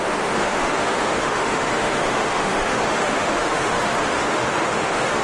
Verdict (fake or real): fake